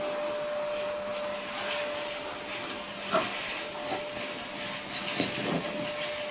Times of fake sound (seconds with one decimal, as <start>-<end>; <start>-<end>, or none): none